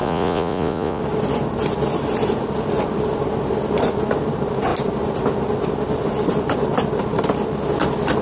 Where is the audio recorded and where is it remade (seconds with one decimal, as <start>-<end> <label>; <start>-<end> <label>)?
0.0-1.0 remade; 1.0-8.2 recorded